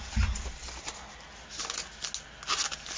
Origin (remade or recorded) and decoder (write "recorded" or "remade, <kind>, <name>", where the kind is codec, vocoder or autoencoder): recorded